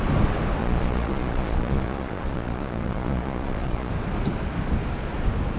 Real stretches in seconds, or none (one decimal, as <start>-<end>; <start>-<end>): 0.0-0.6; 3.9-5.6

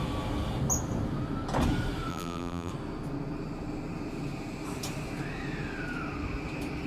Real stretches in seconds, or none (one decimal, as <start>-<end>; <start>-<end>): 0.0-2.1; 2.7-6.9

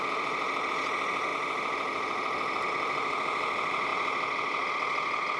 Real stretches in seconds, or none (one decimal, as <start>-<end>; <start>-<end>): 0.0-5.4

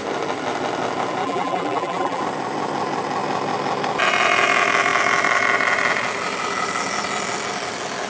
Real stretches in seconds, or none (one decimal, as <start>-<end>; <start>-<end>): 0.0-1.2; 2.2-8.1

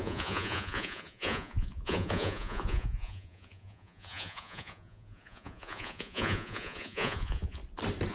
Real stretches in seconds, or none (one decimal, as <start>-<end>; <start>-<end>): 7.6-8.1

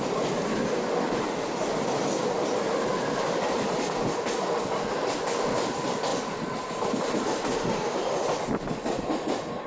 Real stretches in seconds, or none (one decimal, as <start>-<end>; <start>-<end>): 0.0-9.7

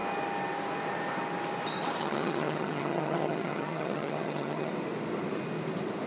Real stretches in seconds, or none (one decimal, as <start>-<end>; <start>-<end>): 0.0-2.0; 4.7-6.1